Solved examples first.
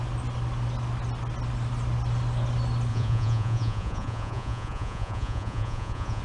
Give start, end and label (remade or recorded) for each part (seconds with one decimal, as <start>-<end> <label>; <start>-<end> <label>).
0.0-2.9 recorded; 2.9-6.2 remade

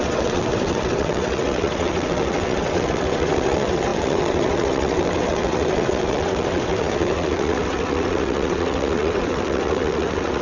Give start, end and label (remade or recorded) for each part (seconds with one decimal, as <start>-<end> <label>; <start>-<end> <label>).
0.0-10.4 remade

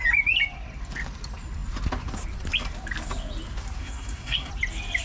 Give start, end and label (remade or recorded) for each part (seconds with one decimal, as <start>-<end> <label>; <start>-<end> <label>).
0.0-3.8 recorded; 3.8-4.5 remade; 4.5-5.0 recorded